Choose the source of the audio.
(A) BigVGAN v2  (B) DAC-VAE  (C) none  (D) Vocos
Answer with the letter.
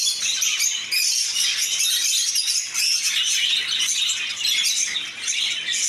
C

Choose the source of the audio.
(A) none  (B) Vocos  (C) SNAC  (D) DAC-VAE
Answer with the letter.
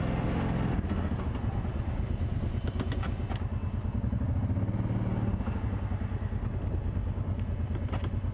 A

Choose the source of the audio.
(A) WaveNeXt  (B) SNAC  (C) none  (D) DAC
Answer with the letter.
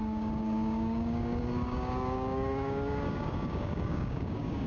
D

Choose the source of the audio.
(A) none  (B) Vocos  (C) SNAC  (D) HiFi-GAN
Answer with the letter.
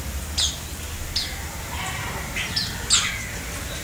A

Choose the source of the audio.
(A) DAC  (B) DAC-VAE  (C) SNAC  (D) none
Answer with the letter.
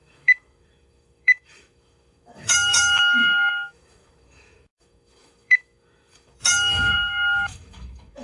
B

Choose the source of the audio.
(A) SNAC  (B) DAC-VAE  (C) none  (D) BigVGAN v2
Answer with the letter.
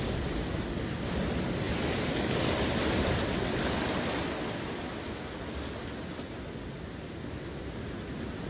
C